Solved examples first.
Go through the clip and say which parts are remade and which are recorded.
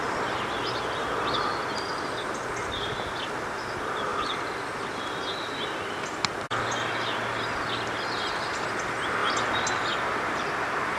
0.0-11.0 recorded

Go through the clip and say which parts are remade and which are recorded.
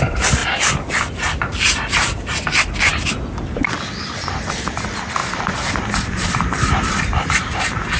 0.0-5.2 recorded; 5.2-7.5 remade; 7.5-8.0 recorded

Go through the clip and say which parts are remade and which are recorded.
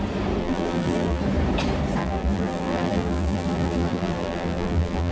0.0-0.4 recorded; 0.4-1.2 remade; 1.2-2.0 recorded; 2.0-5.1 remade